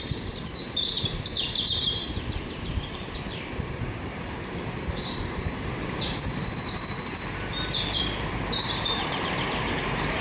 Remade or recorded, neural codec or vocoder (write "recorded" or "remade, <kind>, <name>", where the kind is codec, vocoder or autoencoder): remade, vocoder, BigVGAN v2